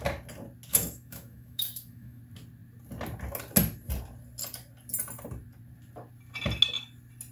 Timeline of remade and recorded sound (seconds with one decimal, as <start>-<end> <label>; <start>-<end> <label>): 0.0-0.7 recorded; 0.7-2.2 remade; 2.2-7.3 recorded